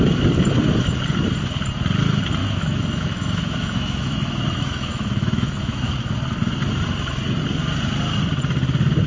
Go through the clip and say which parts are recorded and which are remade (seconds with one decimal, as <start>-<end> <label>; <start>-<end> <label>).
0.0-2.4 recorded; 2.4-5.9 remade; 5.9-9.1 recorded